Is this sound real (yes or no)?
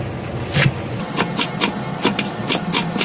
yes